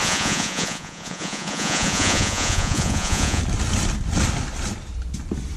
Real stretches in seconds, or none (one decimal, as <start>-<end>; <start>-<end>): 3.4-5.6